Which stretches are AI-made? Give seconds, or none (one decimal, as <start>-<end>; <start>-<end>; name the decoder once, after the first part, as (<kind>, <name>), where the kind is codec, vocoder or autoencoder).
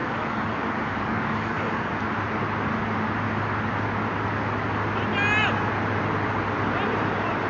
0.0-2.0 (codec, DAC)